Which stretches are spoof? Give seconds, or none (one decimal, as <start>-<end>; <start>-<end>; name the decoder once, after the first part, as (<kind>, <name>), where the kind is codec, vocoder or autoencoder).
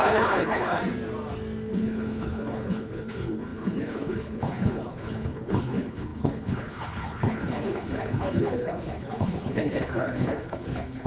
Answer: 0.0-0.8 (codec, HILCodec); 1.7-11.1